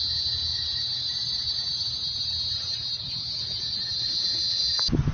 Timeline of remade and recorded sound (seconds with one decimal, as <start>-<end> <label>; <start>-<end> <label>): 0.0-0.5 recorded; 0.5-3.6 remade; 3.6-5.1 recorded